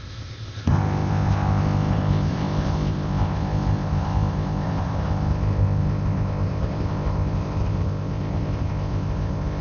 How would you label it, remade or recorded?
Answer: remade